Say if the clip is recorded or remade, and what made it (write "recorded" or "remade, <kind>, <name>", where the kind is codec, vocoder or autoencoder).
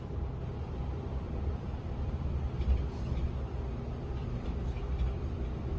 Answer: remade, vocoder, BigVGAN v2